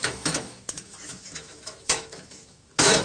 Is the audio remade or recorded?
remade